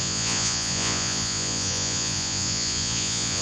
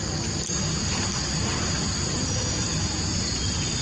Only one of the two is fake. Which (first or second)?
first